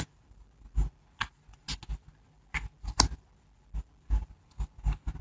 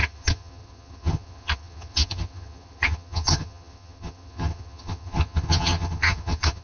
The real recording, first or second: first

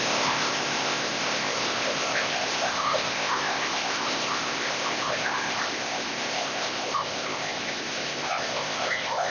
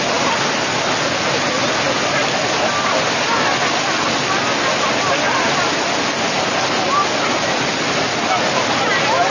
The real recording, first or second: second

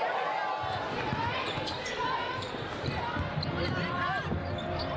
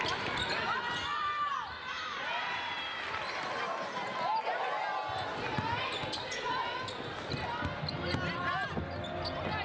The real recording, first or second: second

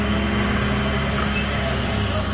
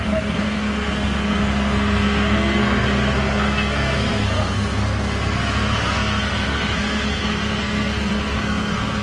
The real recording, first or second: first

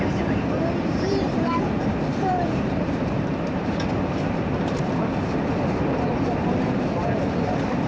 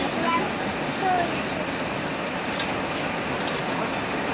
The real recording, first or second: second